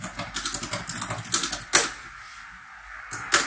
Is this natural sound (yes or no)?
yes